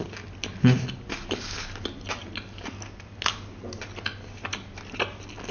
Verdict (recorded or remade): recorded